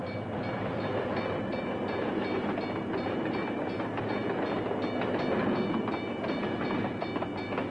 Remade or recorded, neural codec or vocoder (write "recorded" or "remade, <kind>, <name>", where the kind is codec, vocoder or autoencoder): recorded